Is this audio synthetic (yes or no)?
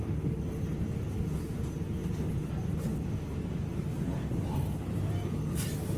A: no